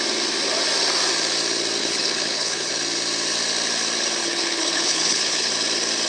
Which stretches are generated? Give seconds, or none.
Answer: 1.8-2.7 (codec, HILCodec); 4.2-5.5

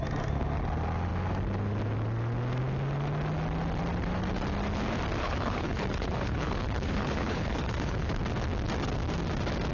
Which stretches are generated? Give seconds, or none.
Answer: 5.2-8.2 (codec, HILCodec)

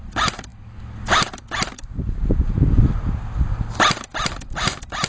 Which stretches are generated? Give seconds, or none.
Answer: none

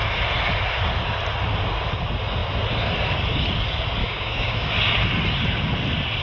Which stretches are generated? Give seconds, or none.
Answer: 4.0-4.7 (codec, DAC)

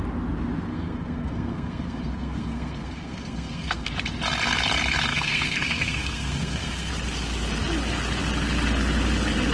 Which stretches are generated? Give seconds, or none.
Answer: 0.7-3.9 (codec, SNAC); 5.1-6.9